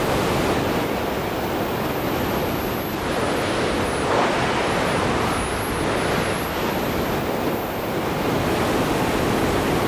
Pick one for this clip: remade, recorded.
recorded